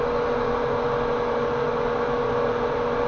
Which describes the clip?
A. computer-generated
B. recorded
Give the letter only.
B